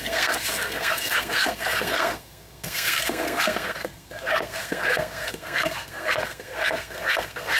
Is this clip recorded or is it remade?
remade